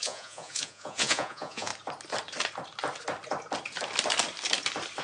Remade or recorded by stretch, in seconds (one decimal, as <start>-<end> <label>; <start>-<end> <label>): 0.0-1.7 remade; 1.7-5.0 recorded